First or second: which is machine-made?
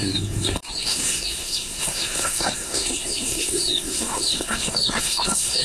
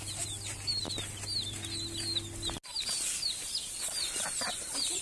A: first